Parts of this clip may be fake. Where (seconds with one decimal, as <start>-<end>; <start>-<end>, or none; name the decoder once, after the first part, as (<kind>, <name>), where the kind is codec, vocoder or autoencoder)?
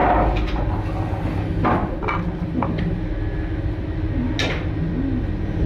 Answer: none